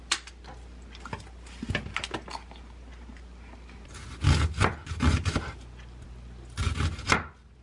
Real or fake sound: real